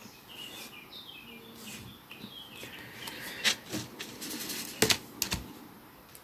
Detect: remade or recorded recorded